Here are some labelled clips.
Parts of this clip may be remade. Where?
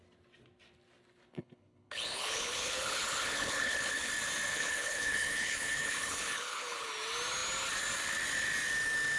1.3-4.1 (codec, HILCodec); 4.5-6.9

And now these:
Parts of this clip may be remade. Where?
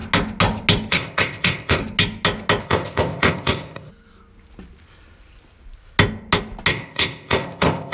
0.9-1.8 (codec, ZipCodec); 2.6-3.9; 6.7-7.9